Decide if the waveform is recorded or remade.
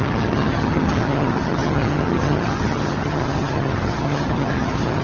remade